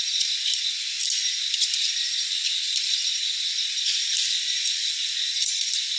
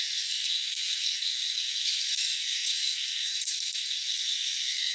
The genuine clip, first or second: first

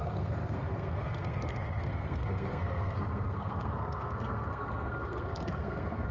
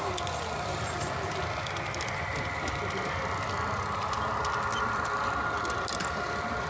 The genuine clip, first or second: second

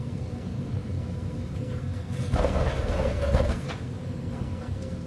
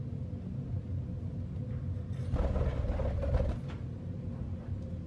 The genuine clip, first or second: second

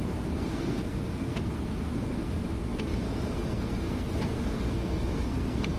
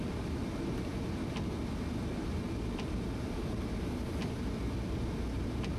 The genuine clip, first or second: second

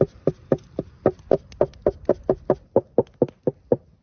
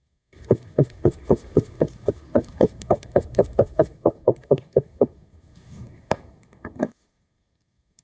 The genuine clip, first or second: first